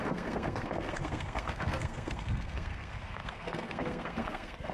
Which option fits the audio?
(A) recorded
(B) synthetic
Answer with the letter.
B